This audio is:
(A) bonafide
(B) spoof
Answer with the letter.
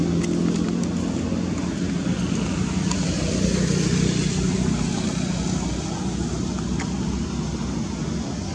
A